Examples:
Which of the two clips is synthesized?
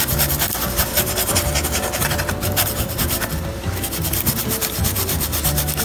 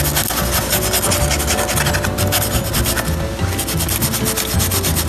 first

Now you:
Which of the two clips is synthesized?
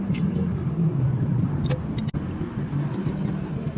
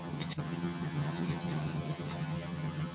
second